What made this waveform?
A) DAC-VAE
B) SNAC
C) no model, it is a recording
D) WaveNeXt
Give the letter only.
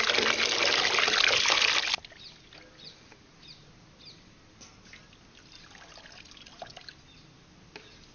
C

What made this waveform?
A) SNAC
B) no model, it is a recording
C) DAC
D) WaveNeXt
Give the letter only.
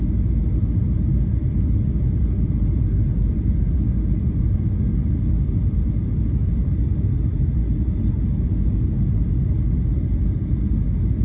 B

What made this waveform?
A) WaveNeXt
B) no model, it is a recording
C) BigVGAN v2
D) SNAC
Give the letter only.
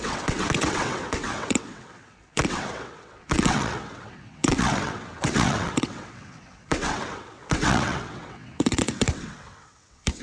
A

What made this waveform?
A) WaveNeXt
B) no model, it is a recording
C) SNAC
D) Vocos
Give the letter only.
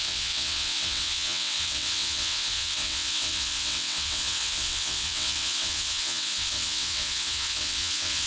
A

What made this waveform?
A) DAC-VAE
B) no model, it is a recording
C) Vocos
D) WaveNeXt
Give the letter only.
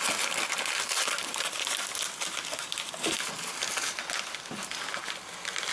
B